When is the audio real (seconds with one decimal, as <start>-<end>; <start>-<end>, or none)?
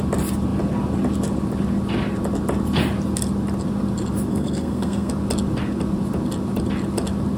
0.0-4.3; 5.1-7.4